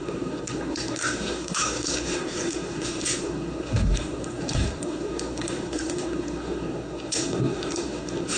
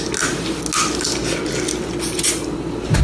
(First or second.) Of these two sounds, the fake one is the first